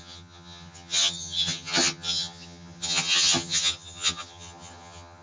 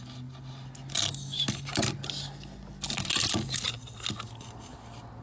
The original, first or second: second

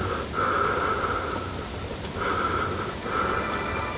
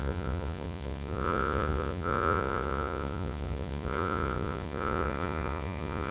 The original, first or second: first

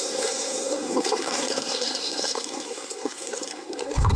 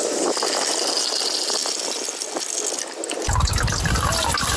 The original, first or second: second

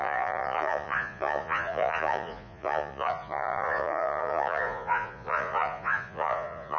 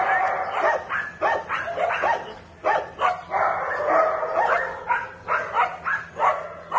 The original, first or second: second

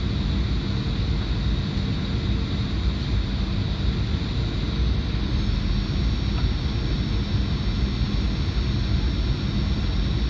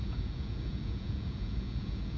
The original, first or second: first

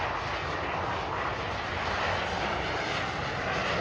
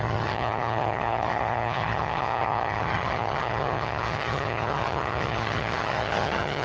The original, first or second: first